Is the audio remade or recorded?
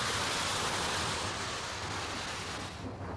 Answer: recorded